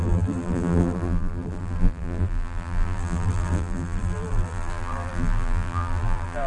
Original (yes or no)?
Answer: no